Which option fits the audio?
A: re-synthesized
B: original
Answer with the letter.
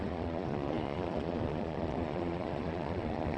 A